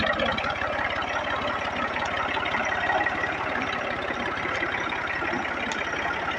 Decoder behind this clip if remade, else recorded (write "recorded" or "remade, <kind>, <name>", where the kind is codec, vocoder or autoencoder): recorded